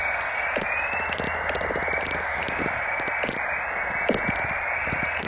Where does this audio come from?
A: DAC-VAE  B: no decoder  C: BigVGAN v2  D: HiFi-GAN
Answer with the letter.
B